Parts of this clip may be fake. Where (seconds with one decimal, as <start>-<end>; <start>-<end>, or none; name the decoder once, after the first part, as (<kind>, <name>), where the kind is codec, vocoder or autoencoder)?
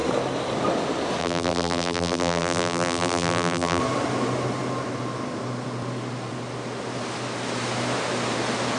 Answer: 1.2-3.8 (vocoder, BigVGAN v2)